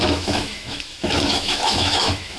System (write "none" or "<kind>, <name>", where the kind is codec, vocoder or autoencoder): autoencoder, DAC-VAE